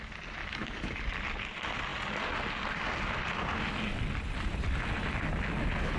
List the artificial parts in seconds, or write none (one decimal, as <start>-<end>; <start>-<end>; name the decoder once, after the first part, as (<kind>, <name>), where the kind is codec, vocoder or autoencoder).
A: 0.4-1.0 (codec, DAC)

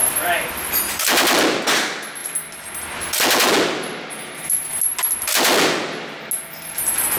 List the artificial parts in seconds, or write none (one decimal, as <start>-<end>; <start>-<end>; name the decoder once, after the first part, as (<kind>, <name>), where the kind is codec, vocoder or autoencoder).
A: none